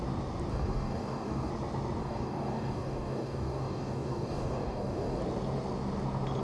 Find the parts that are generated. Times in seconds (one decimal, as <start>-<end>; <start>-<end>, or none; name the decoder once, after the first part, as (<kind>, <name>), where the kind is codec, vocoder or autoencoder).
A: 0.5-1.5 (codec, DAC); 2.0-5.2